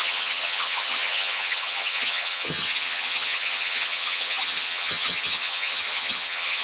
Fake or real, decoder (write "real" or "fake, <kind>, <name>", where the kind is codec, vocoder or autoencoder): fake, vocoder, HiFi-GAN